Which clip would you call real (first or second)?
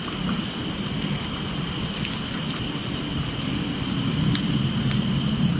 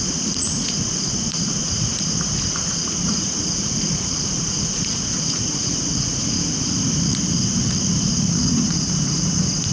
first